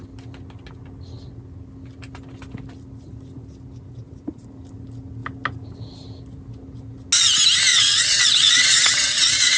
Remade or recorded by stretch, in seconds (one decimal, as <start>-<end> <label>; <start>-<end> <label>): 0.0-7.7 recorded; 7.7-9.6 remade